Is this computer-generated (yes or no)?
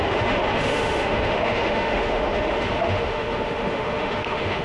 yes